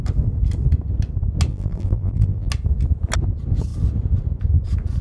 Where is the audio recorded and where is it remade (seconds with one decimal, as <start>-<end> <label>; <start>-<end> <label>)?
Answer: 0.0-1.5 recorded; 1.5-2.5 remade; 2.5-5.0 recorded